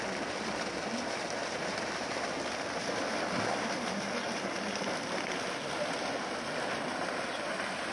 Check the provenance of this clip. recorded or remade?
recorded